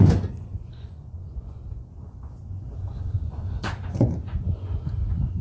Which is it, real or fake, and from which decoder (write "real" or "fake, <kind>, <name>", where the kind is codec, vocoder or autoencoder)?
fake, vocoder, Vocos